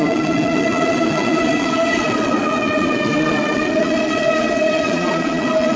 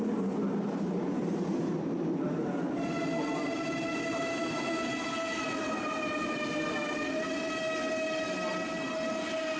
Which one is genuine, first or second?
second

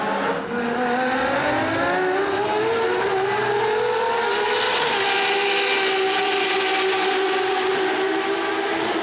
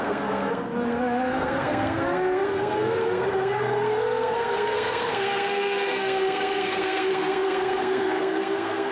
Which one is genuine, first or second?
first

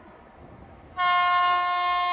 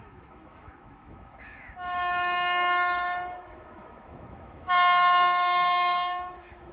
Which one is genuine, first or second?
first